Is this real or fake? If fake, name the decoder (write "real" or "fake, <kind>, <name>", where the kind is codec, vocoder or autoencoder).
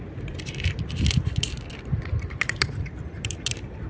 fake, vocoder, BigVGAN v2